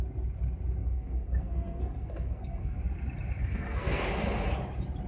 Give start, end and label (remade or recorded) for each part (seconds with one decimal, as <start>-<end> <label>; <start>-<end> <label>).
0.0-0.8 recorded; 0.8-2.8 remade; 2.8-3.4 recorded; 3.4-4.0 remade; 4.0-5.1 recorded